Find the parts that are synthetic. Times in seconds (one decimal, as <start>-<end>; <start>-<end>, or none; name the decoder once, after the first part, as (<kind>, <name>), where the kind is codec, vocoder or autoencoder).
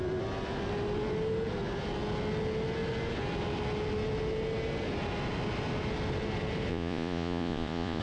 6.7-8.0 (vocoder, Vocos)